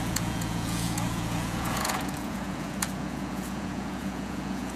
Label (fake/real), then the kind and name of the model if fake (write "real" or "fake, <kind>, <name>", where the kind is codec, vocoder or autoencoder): fake, vocoder, Vocos